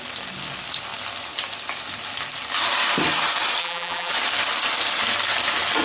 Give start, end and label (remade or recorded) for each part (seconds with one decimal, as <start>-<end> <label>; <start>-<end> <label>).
0.0-3.6 recorded; 3.6-4.1 remade; 4.1-5.8 recorded